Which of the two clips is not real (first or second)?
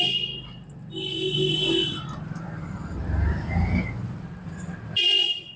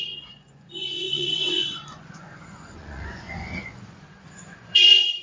second